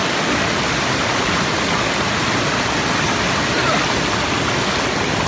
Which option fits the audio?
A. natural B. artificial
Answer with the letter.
A